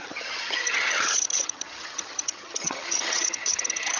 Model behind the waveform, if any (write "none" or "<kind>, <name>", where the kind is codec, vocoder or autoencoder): vocoder, HiFi-GAN